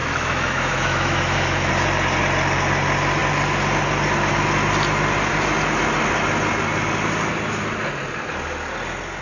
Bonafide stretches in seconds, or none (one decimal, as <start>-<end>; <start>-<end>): 1.7-9.2